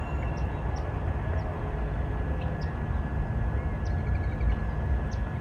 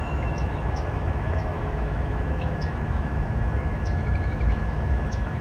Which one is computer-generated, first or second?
second